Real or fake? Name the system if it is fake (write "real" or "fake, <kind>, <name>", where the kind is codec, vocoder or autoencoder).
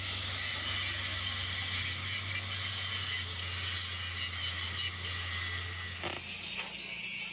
real